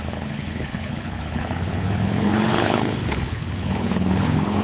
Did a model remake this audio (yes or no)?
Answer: yes